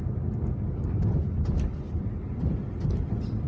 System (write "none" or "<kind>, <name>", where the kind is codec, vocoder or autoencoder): none